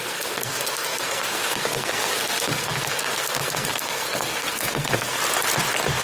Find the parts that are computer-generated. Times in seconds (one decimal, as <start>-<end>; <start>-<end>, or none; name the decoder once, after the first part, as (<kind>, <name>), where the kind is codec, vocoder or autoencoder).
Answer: 0.0-5.2 (codec, SNAC)